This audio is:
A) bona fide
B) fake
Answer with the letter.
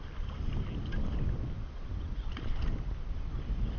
A